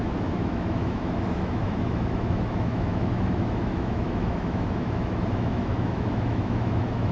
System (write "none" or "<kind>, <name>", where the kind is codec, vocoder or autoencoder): autoencoder, DAC-VAE